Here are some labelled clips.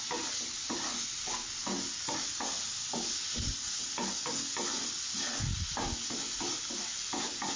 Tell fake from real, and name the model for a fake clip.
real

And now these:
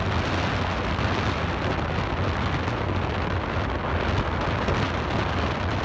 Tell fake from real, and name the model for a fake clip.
real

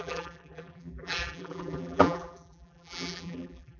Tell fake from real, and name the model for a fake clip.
fake, vocoder, BigVGAN v2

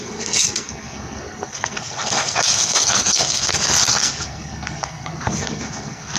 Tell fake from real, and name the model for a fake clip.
fake, codec, SNAC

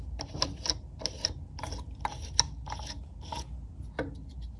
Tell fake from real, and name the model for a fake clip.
real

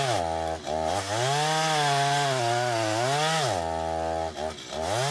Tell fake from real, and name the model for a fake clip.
real